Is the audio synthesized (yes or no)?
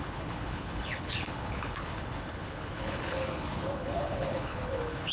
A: yes